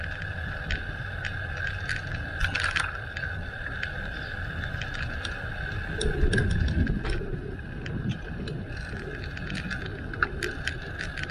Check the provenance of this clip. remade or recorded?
recorded